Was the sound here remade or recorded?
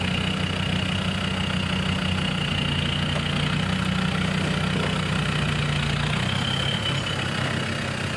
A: recorded